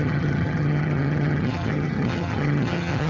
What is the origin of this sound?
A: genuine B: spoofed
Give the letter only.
B